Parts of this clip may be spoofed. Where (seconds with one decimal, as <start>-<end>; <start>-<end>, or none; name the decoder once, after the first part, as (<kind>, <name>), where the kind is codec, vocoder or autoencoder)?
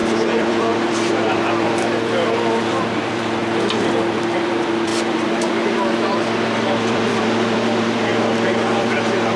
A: 0.0-3.4 (vocoder, BigVGAN v2); 4.0-8.1; 8.8-9.4